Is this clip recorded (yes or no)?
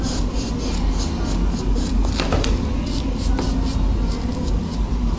yes